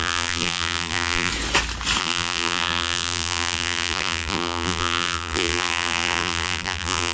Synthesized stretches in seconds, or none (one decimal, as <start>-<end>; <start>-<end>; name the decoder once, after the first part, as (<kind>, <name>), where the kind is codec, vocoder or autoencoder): 0.0-1.3 (vocoder, BigVGAN v2); 2.0-7.1